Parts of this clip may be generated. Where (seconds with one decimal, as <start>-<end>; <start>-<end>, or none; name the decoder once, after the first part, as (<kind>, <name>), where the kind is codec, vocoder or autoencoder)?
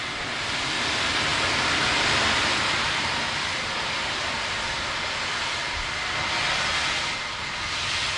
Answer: none